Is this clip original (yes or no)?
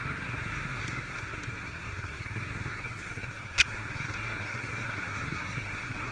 no